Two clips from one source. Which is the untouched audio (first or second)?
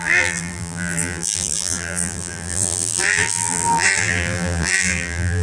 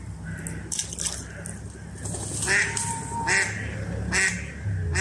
second